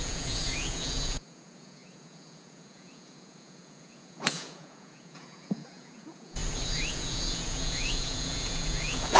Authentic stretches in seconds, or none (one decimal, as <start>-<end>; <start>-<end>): 6.4-6.9